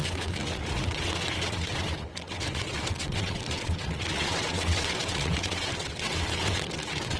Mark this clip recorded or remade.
remade